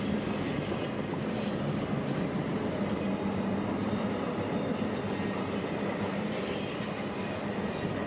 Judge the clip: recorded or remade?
recorded